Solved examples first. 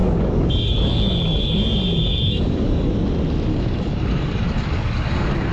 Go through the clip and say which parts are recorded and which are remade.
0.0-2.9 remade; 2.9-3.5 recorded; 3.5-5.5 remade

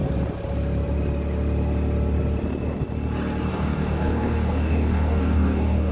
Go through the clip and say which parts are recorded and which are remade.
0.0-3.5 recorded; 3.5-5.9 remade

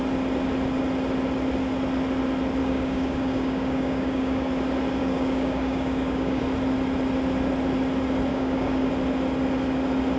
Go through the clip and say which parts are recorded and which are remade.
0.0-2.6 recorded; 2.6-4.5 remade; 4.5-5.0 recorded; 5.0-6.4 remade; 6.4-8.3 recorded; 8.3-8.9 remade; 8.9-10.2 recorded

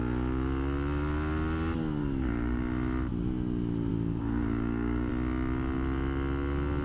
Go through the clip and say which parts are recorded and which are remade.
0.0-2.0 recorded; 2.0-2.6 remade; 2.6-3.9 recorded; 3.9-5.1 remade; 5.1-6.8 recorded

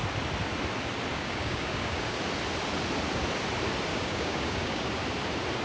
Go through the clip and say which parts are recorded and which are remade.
0.0-1.1 recorded; 1.1-2.2 remade; 2.2-3.9 recorded; 3.9-4.9 remade; 4.9-5.6 recorded

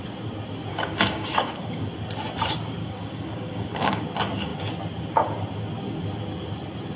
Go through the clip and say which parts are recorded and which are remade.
0.0-0.7 recorded; 0.7-1.9 remade; 1.9-2.8 recorded; 2.8-4.0 remade; 4.0-7.0 recorded

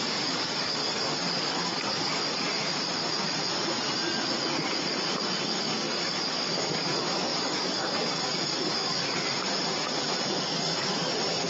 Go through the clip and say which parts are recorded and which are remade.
0.0-2.2 remade; 2.2-5.6 recorded; 5.6-9.0 remade; 9.0-10.4 recorded; 10.4-11.5 remade